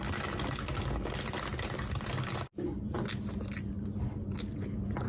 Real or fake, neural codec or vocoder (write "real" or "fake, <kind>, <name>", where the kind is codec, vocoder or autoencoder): real